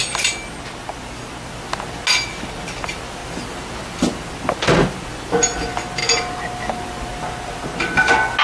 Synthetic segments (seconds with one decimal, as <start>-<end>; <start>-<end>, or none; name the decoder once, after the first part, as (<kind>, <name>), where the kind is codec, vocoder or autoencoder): none